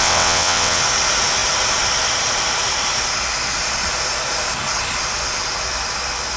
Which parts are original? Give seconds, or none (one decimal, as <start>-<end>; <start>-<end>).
0.8-6.4